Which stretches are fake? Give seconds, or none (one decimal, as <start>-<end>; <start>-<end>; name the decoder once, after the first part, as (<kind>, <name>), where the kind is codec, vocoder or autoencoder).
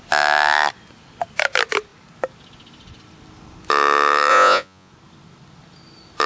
4.3-4.9 (vocoder, Vocos)